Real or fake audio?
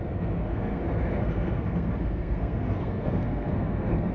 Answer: fake